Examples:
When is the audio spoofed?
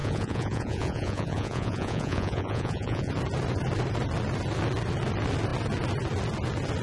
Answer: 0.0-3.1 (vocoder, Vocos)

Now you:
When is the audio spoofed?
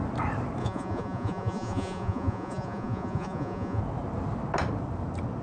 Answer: 0.6-3.8 (vocoder, Vocos)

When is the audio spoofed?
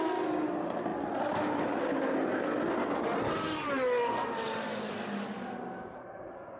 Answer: none